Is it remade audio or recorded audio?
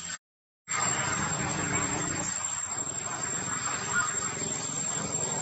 recorded